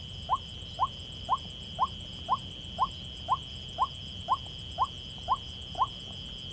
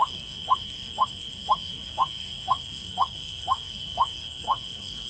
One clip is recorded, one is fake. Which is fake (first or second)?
second